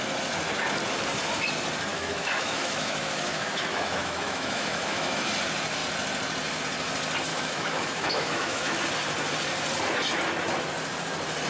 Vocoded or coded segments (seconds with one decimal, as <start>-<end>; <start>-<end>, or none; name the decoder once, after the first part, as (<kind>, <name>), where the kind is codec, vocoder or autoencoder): 1.9-5.3 (autoencoder, DAC-VAE); 7.3-8.8